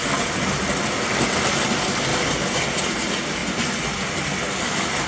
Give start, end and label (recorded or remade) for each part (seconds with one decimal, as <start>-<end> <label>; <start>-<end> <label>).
0.0-5.1 recorded

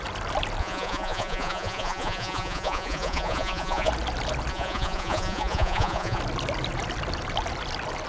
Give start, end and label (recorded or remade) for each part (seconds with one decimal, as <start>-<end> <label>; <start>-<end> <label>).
0.0-0.6 recorded; 0.6-3.9 remade; 3.9-4.5 recorded; 4.5-6.2 remade; 6.2-8.1 recorded

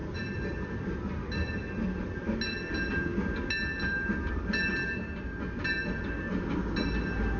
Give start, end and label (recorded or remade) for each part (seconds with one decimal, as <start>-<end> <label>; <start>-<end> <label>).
0.0-4.8 recorded; 4.8-5.4 remade; 5.4-7.4 recorded

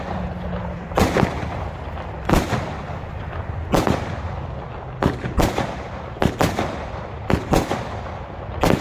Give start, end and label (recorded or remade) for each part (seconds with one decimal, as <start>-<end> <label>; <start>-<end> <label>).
0.0-8.8 recorded

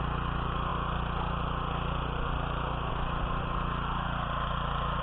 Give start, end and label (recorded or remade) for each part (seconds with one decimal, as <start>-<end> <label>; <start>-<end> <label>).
0.0-5.0 recorded

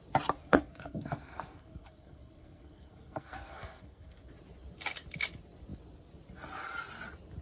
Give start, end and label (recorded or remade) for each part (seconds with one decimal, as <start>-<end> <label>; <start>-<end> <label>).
0.0-0.4 recorded; 0.4-4.3 remade; 4.3-7.4 recorded

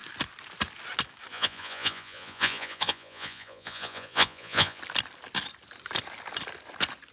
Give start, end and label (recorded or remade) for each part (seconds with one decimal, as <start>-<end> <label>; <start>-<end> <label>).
0.0-1.3 recorded; 1.3-4.8 remade; 4.8-7.1 recorded

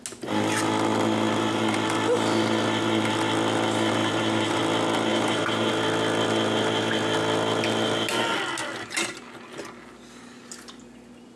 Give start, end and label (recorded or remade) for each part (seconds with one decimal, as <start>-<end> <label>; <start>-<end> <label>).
0.0-4.0 recorded; 4.0-4.6 remade; 4.6-5.1 recorded; 5.1-5.7 remade; 5.7-11.4 recorded